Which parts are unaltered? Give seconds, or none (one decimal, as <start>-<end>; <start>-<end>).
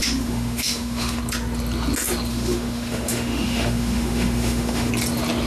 1.2-2.3; 4.9-5.5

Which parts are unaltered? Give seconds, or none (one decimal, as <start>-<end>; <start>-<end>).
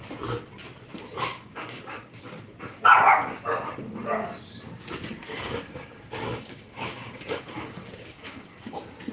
0.0-1.3; 2.3-5.2; 8.7-9.1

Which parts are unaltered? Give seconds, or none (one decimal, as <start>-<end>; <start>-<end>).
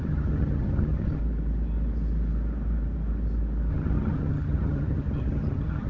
1.2-3.7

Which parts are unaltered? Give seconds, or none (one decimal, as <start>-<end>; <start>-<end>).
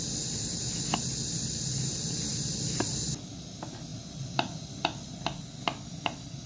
0.0-6.5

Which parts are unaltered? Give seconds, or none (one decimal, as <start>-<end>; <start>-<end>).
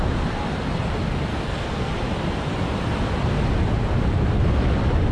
0.0-1.3; 1.9-5.1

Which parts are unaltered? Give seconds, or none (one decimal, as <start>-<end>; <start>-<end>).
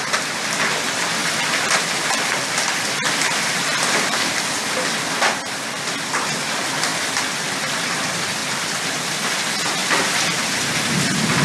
0.0-1.2; 5.9-6.9; 7.5-8.4; 9.1-9.8; 10.4-11.4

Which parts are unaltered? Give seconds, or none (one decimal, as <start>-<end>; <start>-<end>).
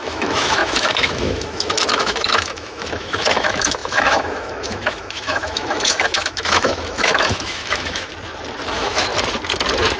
8.1-8.7; 9.1-10.0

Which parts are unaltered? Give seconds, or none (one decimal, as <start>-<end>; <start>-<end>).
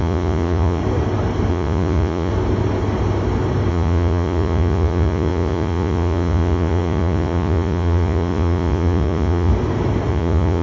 0.8-1.5; 2.3-3.7; 9.5-10.1